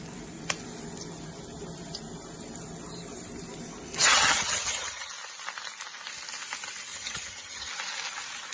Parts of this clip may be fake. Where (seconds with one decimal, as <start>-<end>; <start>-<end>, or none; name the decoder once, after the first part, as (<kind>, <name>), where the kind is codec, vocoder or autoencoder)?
4.0-5.1 (vocoder, HiFi-GAN); 6.9-7.7